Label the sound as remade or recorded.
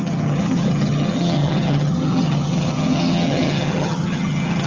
remade